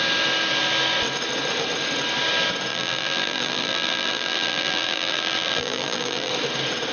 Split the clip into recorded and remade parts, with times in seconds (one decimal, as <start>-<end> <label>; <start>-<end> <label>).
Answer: 0.0-2.7 recorded; 2.7-6.3 remade; 6.3-6.9 recorded